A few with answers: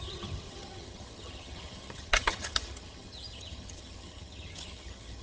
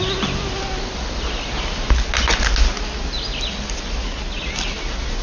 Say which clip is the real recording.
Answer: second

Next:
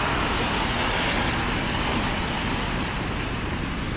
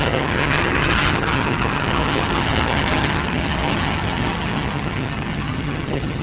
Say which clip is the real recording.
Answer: first